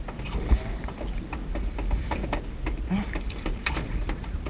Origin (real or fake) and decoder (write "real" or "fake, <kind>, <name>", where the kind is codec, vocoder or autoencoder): real